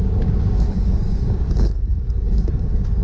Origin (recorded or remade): remade